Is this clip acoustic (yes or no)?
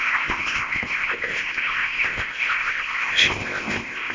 no